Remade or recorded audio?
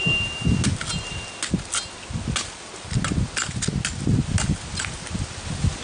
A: recorded